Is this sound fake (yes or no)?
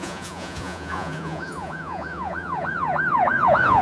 yes